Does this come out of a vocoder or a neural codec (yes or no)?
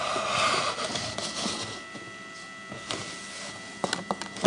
no